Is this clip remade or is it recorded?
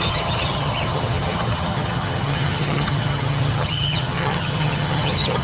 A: remade